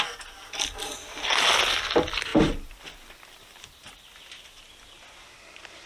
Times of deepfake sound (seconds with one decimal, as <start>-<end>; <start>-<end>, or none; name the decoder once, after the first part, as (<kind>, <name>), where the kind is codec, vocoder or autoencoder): none